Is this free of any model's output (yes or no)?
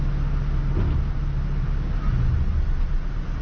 yes